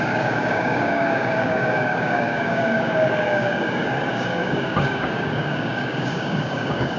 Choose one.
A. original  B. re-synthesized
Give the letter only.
B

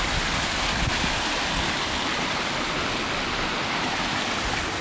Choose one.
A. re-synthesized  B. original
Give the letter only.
B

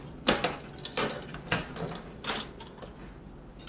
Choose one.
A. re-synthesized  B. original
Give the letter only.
B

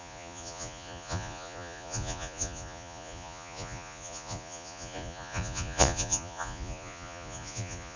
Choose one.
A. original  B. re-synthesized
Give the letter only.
B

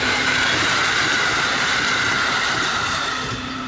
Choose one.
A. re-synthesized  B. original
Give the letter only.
A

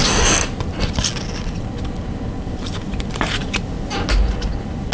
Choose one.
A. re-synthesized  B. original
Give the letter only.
B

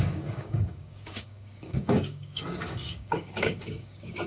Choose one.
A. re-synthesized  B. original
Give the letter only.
A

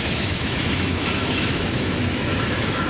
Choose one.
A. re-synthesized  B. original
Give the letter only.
A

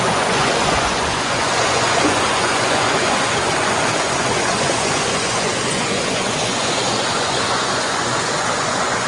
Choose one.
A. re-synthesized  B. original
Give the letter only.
A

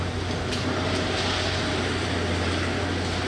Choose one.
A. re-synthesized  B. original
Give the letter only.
B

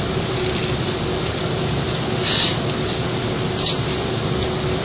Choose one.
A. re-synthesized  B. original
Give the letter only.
B